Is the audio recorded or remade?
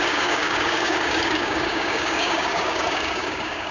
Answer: remade